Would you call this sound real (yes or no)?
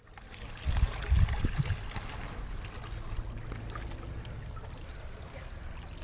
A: yes